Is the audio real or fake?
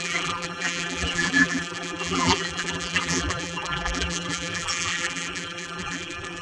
fake